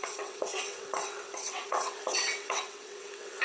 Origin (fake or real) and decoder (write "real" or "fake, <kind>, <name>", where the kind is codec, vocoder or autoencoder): fake, vocoder, WaveNeXt